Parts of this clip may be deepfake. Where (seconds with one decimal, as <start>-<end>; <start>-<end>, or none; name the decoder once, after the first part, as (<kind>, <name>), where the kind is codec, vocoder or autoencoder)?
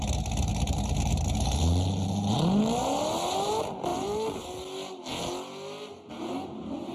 0.5-1.6 (vocoder, BigVGAN v2); 3.9-4.4